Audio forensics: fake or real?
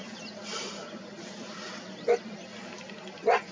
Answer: real